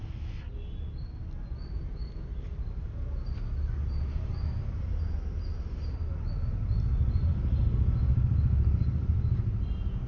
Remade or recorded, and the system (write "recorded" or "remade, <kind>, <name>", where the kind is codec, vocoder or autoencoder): recorded